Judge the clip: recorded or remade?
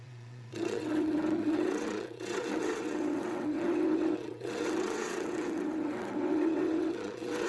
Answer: remade